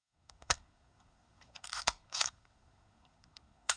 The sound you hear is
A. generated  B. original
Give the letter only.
A